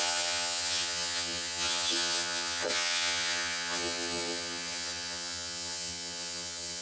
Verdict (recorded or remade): remade